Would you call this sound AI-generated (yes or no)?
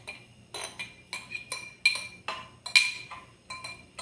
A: no